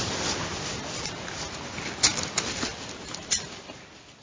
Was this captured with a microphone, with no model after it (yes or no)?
yes